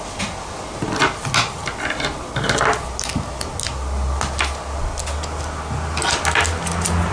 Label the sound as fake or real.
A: real